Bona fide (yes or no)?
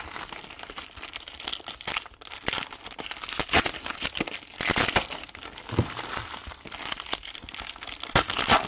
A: yes